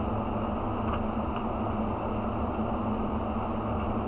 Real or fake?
real